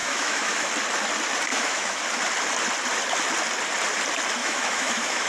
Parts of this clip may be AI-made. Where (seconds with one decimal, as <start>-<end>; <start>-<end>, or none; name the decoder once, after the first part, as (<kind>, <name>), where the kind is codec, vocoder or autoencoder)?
0.0-0.7 (autoencoder, DAC-VAE); 1.5-2.0; 4.4-5.3